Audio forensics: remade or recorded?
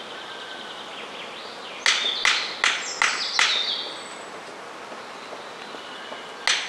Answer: recorded